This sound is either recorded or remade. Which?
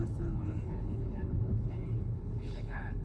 remade